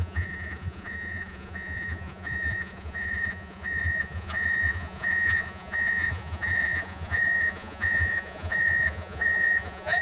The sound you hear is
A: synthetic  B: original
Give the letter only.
A